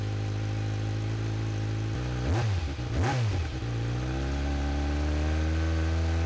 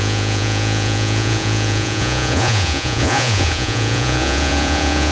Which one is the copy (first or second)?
second